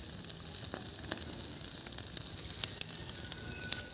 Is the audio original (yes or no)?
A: yes